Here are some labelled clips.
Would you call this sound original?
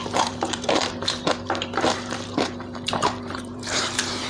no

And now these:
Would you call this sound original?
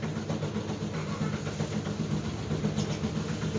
yes